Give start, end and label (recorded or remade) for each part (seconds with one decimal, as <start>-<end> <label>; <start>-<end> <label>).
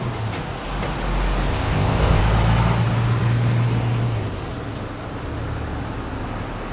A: 0.0-1.5 recorded; 1.5-2.2 remade; 2.2-6.7 recorded